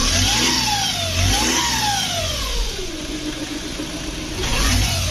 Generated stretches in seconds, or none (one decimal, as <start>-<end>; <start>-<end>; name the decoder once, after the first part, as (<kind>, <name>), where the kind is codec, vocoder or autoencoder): 2.2-3.8 (vocoder, Vocos); 4.3-5.1

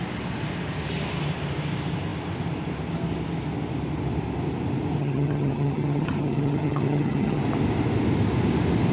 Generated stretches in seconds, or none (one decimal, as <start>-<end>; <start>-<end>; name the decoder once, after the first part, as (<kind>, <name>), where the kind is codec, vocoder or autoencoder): 5.0-7.4 (vocoder, HiFi-GAN)

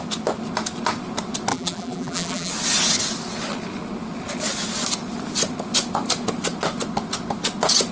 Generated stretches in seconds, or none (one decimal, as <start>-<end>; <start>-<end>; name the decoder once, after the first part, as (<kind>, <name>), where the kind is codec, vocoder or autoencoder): 1.5-2.5 (vocoder, BigVGAN v2)

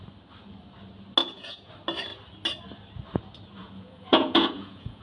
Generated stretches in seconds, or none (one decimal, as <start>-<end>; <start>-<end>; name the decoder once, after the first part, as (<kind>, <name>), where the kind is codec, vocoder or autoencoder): 1.2-1.7 (vocoder, Vocos); 3.6-5.0